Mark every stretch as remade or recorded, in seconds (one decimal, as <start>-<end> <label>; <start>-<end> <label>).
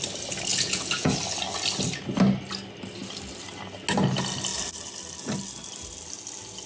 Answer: 0.0-0.5 recorded; 0.5-1.1 remade; 1.1-6.7 recorded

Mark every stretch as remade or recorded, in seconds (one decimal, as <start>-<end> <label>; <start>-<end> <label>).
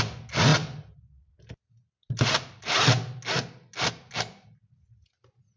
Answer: 0.0-5.6 recorded